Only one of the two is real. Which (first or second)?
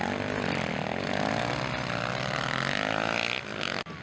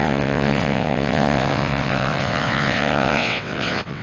first